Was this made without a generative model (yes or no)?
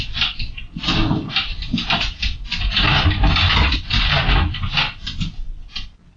yes